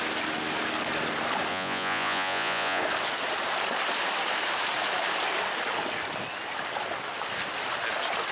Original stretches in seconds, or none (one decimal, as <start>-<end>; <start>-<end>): 0.0-1.5; 2.8-8.3

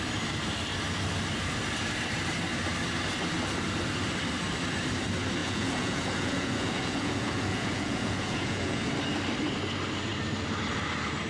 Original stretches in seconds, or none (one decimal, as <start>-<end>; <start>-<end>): 0.0-5.4; 8.9-11.3

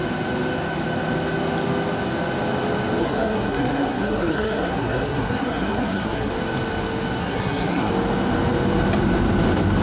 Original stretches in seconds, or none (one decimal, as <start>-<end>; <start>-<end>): 0.0-3.0; 6.3-7.2; 7.9-9.8